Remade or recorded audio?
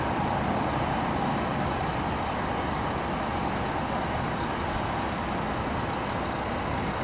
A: recorded